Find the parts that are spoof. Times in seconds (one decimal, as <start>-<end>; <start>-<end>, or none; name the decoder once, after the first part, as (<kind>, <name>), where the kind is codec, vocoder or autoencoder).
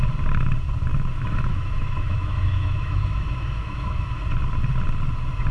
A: 0.9-4.2 (autoencoder, DAC-VAE)